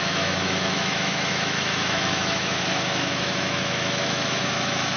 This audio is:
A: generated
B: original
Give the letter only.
A